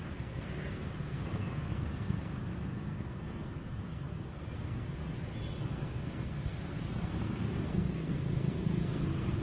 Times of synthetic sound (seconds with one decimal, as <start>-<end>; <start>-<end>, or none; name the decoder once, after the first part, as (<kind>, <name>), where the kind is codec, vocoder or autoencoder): 0.0-5.0 (codec, SNAC); 5.6-9.4